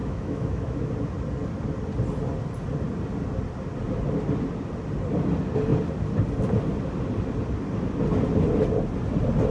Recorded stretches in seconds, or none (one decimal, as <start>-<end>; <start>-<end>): 0.9-9.5